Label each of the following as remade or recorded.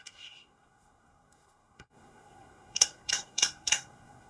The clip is remade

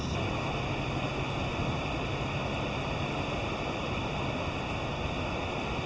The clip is recorded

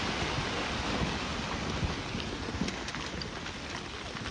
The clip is recorded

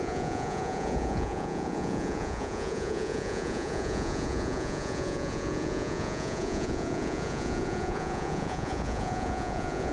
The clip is remade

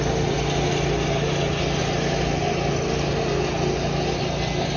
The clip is recorded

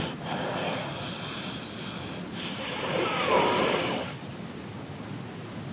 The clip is recorded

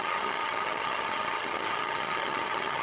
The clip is remade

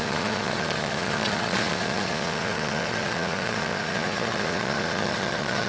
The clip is remade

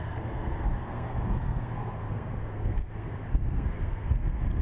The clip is remade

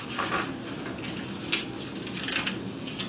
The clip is recorded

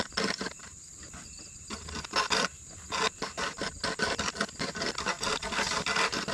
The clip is recorded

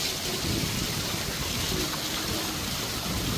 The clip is recorded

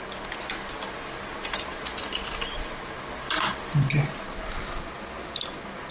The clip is recorded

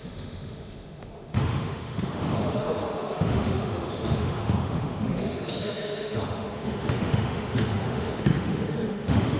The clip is remade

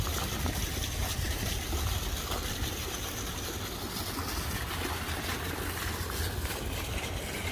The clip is recorded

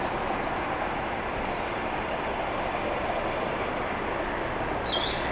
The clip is recorded